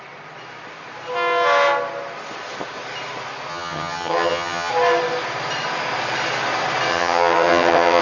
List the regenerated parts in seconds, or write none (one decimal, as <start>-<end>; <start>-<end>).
3.5-4.7; 6.9-8.0